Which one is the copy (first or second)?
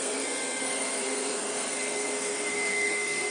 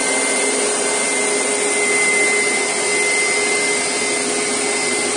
first